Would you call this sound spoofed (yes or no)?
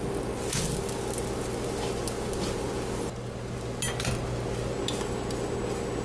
no